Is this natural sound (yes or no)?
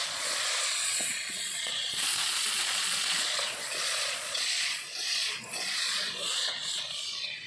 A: no